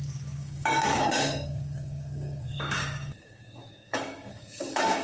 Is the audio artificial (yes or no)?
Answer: yes